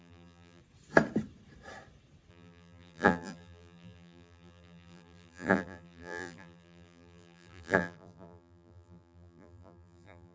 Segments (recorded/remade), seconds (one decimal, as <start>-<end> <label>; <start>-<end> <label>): 0.0-0.6 remade; 0.6-2.3 recorded; 2.3-10.3 remade